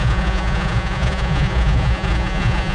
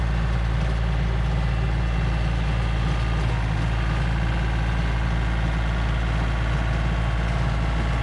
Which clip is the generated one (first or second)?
first